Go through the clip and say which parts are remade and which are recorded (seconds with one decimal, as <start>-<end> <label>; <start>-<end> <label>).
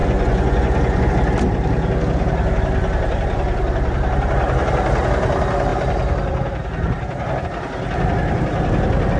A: 0.0-1.1 remade; 1.1-9.2 recorded